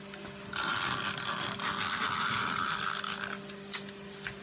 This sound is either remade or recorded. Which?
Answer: recorded